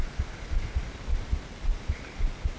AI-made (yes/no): no